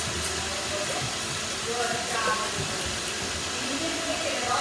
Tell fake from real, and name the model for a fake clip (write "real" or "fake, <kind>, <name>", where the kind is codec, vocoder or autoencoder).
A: real